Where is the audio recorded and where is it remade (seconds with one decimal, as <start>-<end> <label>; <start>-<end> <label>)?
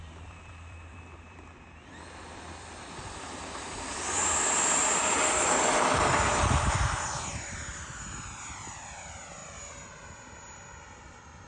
0.0-9.4 remade; 9.4-10.8 recorded; 10.8-11.5 remade